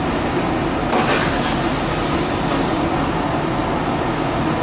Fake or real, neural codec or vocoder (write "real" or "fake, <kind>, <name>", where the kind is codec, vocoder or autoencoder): real